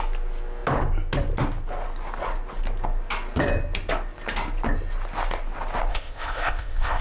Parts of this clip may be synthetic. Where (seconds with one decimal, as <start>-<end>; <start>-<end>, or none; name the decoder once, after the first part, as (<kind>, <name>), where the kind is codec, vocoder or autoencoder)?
5.9-7.0 (codec, ZipCodec)